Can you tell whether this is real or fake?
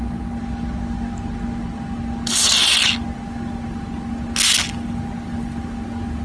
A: real